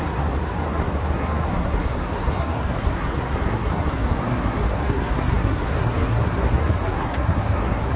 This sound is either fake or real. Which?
fake